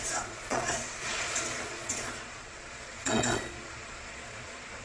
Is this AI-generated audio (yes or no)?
yes